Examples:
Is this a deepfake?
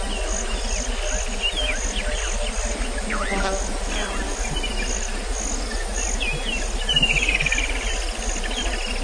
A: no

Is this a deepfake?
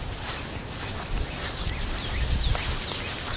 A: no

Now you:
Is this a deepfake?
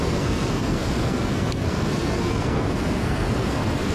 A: yes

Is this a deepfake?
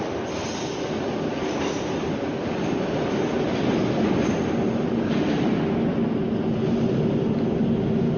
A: no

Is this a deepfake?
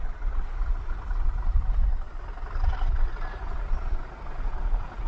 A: no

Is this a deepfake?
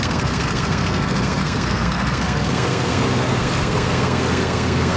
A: yes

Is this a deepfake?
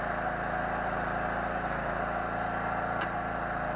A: no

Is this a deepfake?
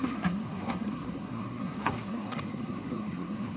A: yes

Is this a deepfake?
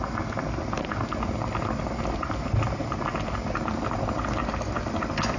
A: no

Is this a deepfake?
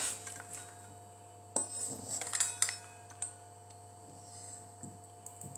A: no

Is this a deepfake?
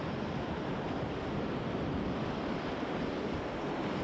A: no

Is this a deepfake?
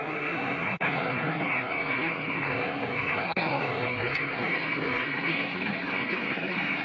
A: yes